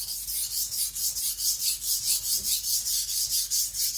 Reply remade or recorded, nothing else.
recorded